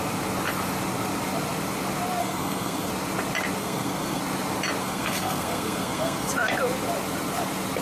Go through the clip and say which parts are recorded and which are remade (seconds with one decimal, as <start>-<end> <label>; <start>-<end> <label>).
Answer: 0.0-2.2 recorded; 2.2-2.9 remade; 2.9-3.6 recorded; 3.6-4.2 remade; 4.2-4.8 recorded; 4.8-6.3 remade; 6.3-7.8 recorded